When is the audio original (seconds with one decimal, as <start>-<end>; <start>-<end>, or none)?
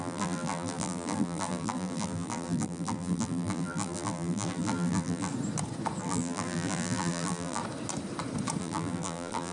5.3-6.0; 7.6-8.6